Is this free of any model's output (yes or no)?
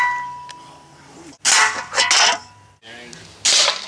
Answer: yes